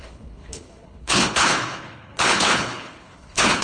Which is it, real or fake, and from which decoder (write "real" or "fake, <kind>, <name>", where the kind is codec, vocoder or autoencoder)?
fake, codec, HILCodec